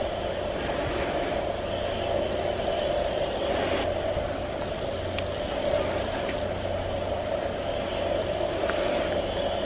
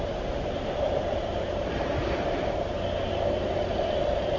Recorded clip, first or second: first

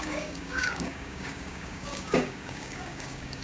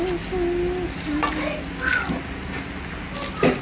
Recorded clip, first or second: second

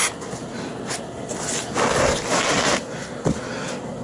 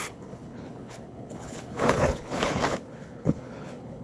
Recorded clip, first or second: first